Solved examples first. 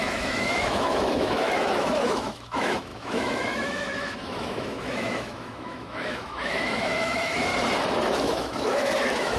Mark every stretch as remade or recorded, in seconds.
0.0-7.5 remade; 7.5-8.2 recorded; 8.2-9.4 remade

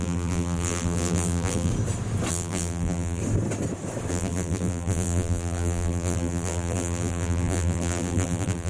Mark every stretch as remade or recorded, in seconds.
0.0-1.7 remade; 1.7-2.3 recorded; 2.3-3.2 remade; 3.2-4.1 recorded; 4.1-8.7 remade

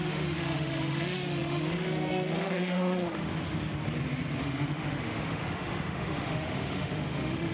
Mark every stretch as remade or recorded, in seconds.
0.0-3.3 remade; 3.3-4.4 recorded; 4.4-7.5 remade

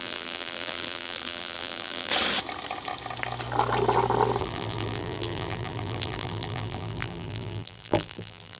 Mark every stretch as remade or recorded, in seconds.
0.0-2.1 remade; 2.1-4.4 recorded; 4.4-8.6 remade

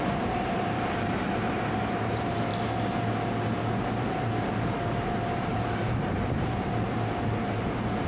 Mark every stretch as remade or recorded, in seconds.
0.0-2.5 remade; 2.5-3.6 recorded; 3.6-8.1 remade

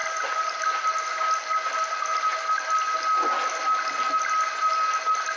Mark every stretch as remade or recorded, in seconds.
0.0-5.4 recorded